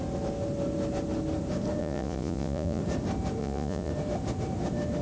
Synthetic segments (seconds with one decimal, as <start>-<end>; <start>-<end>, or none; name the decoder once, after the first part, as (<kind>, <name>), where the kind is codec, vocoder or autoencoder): 1.8-2.8 (vocoder, Vocos); 3.4-3.9